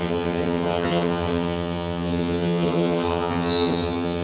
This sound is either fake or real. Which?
fake